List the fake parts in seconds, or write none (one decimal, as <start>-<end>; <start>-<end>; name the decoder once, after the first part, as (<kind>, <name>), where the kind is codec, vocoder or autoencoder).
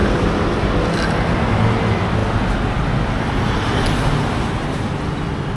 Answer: none